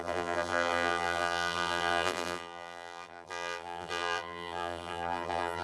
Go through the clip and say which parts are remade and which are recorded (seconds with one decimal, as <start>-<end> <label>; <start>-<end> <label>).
0.0-5.6 remade